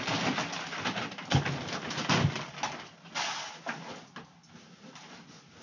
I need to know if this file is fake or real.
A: real